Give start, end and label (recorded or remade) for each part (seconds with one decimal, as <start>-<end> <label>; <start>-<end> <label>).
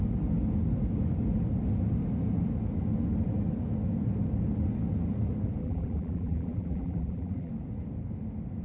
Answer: 0.0-5.6 recorded; 5.6-7.5 remade; 7.5-8.6 recorded